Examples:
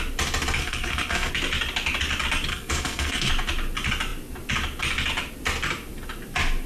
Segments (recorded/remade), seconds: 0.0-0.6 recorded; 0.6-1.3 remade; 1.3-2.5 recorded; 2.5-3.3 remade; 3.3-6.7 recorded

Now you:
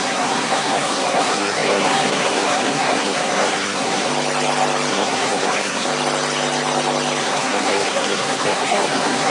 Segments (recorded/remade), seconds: 0.0-4.1 remade; 4.1-4.9 recorded; 4.9-5.9 remade; 5.9-7.2 recorded; 7.2-9.3 remade